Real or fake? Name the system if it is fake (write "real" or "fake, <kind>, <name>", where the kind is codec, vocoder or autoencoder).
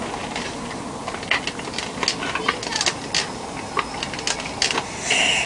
real